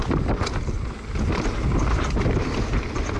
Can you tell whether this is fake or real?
real